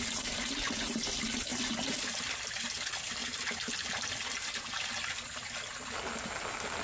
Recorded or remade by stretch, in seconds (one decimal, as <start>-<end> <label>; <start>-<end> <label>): 0.0-6.8 recorded

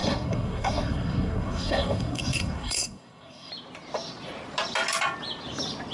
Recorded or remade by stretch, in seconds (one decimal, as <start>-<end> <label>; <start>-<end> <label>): 0.0-3.5 remade; 3.5-5.9 recorded

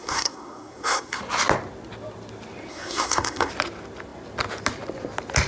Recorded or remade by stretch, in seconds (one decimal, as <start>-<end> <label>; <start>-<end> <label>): 0.0-1.2 remade; 1.2-2.7 recorded; 2.7-3.5 remade; 3.5-5.5 recorded

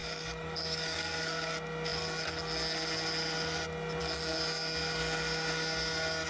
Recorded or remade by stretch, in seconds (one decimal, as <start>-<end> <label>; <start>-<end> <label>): 0.0-1.5 remade; 1.5-6.3 recorded

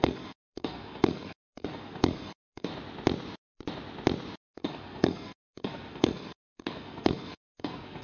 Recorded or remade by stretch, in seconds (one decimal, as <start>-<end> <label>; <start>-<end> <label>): 0.0-2.7 remade; 2.7-4.5 recorded; 4.5-8.0 remade